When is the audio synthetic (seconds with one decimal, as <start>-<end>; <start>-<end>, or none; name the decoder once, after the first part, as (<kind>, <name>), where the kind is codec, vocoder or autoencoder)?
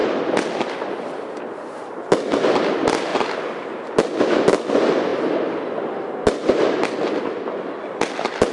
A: none